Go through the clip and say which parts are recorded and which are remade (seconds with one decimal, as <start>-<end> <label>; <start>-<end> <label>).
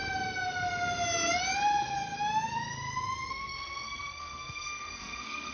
0.0-3.3 recorded; 3.3-5.5 remade